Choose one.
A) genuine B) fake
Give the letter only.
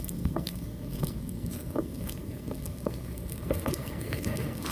B